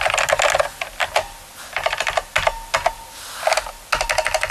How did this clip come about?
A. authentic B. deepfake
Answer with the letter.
A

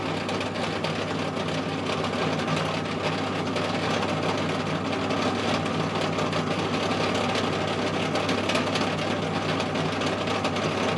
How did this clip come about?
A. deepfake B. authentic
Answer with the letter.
B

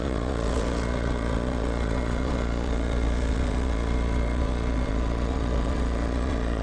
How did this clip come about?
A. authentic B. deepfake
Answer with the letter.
B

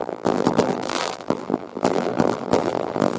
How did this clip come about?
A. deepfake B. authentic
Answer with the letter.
A